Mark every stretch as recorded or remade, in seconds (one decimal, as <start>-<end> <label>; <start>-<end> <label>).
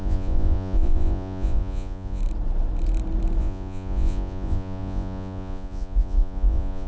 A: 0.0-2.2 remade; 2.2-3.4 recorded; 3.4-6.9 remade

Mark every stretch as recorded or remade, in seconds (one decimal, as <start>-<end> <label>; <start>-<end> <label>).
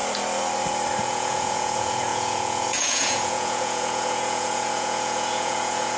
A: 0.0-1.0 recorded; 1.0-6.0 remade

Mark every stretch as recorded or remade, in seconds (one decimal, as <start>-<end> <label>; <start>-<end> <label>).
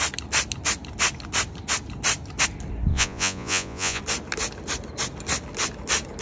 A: 0.0-2.9 recorded; 2.9-4.0 remade; 4.0-6.2 recorded